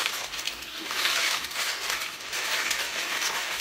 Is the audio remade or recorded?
remade